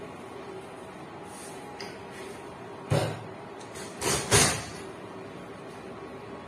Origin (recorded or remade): recorded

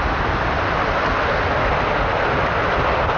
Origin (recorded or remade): recorded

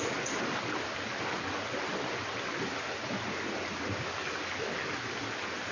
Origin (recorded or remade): recorded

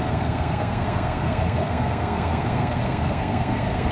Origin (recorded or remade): remade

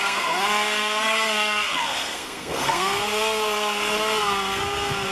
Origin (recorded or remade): remade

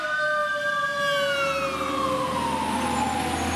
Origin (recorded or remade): recorded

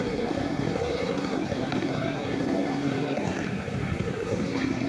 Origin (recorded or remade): remade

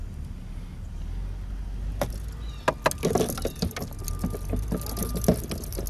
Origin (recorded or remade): recorded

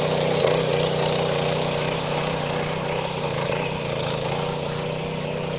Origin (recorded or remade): recorded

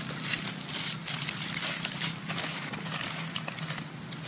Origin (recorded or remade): recorded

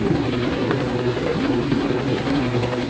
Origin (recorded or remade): remade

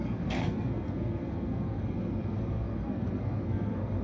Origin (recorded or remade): remade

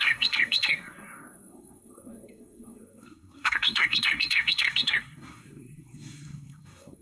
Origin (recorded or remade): remade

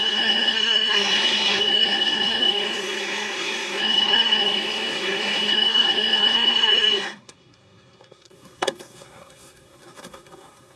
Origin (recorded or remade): remade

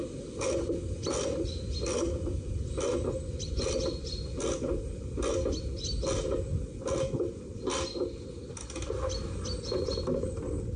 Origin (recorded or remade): recorded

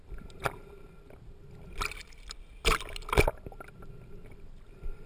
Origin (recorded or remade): recorded